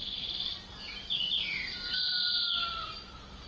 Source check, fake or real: real